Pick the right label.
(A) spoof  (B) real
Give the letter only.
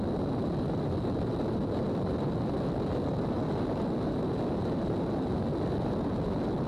B